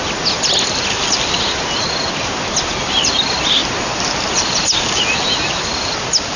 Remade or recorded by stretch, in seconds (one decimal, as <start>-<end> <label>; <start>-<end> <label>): 0.0-6.4 recorded